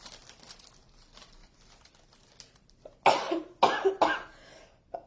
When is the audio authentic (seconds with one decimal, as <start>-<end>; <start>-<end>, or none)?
0.0-5.1